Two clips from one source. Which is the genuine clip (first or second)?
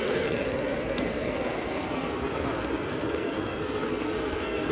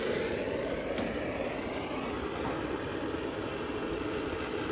second